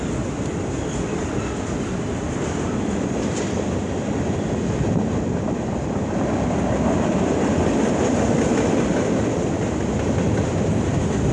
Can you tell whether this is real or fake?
real